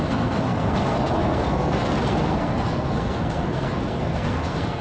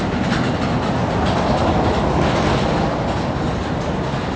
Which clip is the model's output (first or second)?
first